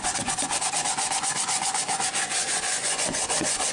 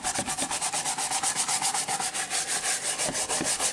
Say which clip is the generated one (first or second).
first